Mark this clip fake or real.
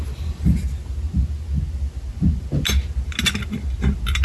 real